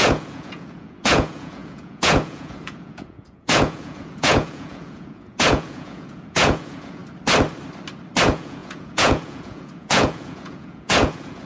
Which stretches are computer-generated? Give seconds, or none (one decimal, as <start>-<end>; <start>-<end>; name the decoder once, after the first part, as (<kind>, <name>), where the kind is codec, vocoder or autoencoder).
0.0-7.0 (vocoder, Vocos); 8.2-11.5